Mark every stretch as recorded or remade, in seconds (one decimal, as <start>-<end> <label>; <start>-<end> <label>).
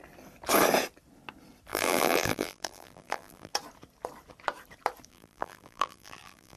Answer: 0.0-1.7 recorded; 1.7-3.5 remade; 3.5-5.1 recorded; 5.1-6.6 remade